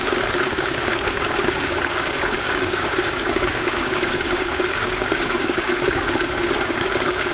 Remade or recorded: remade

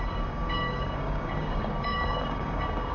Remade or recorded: remade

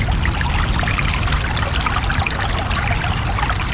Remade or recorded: recorded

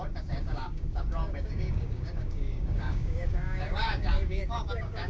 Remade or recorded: remade